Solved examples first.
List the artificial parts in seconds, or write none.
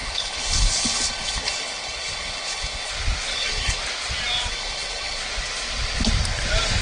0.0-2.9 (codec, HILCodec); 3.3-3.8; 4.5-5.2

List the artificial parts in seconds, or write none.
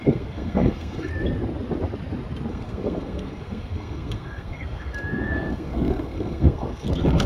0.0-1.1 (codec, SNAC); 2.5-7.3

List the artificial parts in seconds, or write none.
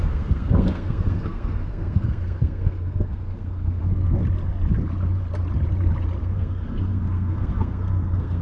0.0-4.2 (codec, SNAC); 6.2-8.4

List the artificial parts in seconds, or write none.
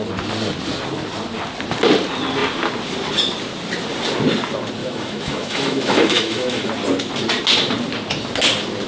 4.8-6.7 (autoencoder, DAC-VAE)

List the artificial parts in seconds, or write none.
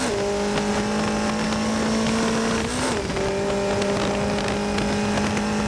none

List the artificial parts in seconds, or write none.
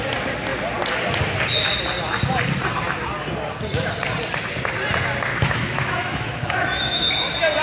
5.3-7.1 (autoencoder, DAC-VAE)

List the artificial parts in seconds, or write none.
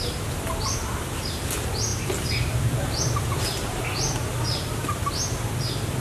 1.9-5.5 (vocoder, BigVGAN v2)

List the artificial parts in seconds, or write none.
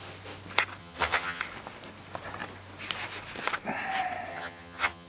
0.8-1.4 (vocoder, HiFi-GAN); 4.3-5.1